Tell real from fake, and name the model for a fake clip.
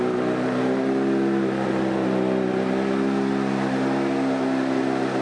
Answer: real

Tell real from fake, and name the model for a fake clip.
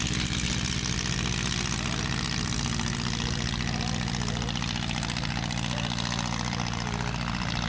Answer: real